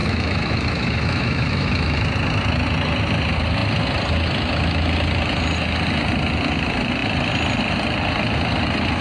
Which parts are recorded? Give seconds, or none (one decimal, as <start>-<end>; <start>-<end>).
2.0-9.0